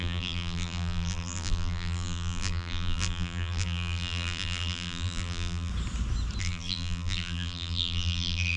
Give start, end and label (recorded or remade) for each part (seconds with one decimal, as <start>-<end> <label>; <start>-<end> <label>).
0.0-5.7 remade; 5.7-6.4 recorded; 6.4-8.6 remade